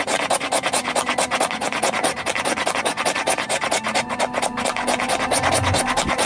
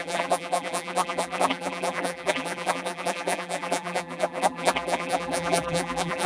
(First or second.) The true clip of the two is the first